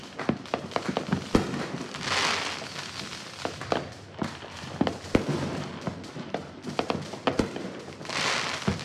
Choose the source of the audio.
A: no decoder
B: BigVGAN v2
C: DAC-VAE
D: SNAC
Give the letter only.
A